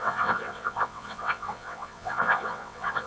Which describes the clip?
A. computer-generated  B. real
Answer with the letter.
A